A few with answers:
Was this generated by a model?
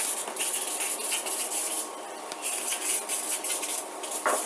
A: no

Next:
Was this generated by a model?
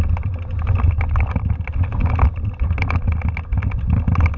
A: no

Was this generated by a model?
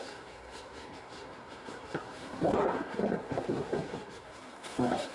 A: yes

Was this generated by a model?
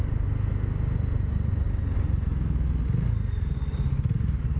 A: no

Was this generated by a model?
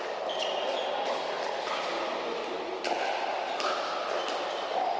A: no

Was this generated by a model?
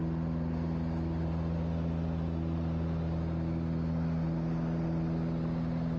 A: no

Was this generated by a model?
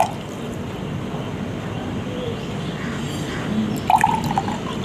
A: no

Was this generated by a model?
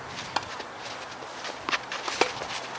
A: no